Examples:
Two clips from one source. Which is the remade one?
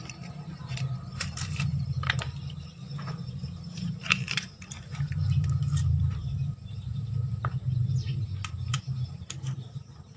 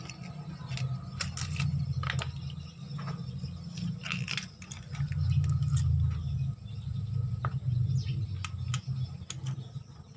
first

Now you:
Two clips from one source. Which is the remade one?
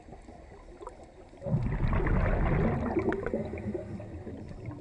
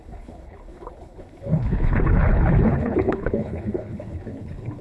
second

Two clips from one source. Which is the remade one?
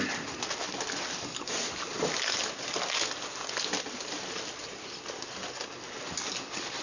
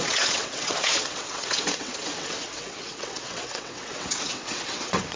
second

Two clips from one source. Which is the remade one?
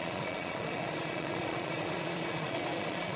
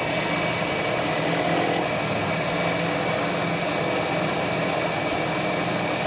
first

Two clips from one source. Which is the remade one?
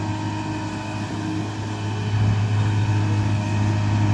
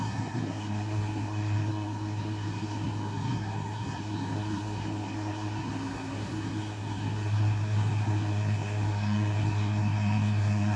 second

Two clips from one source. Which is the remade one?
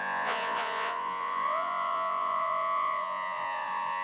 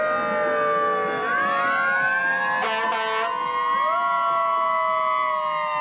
first